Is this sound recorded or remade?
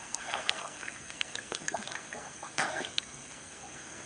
remade